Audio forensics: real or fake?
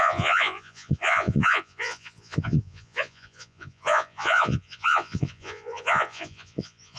fake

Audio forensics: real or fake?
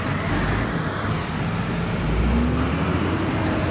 real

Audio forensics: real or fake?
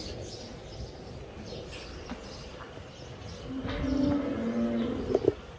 real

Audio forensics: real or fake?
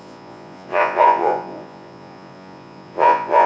fake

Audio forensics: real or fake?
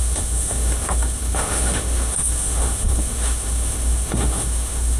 fake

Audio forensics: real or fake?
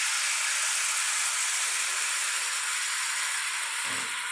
real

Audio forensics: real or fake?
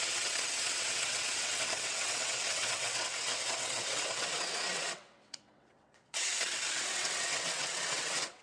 fake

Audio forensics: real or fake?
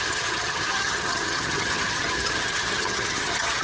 fake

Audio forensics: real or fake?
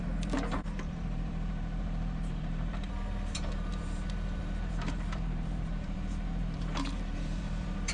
fake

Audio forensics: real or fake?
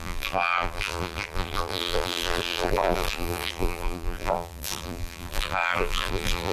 fake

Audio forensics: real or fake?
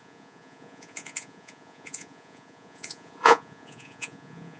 fake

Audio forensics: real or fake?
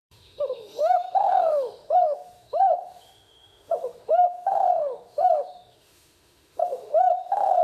fake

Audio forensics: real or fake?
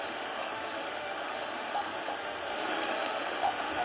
fake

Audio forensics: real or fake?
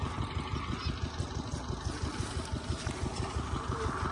real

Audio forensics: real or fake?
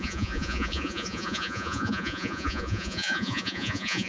fake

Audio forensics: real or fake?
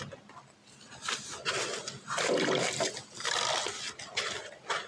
real